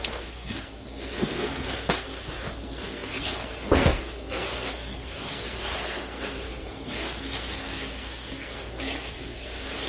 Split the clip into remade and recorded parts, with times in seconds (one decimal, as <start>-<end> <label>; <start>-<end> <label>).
0.0-9.9 remade